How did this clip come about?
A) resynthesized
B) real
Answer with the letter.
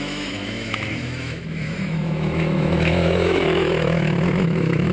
A